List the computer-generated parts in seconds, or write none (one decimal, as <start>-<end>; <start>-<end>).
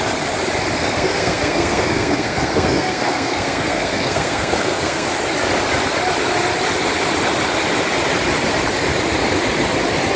0.8-5.1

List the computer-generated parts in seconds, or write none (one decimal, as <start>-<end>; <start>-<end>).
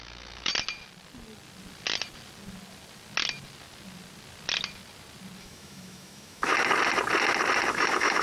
0.0-0.5; 5.4-6.5; 7.7-8.2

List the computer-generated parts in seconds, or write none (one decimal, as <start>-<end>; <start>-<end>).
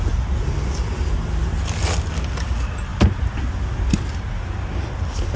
none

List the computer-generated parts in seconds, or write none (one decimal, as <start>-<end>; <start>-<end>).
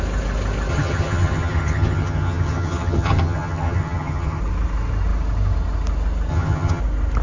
0.7-4.4; 6.3-6.8